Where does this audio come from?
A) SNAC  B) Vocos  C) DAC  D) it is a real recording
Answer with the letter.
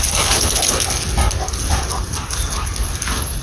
D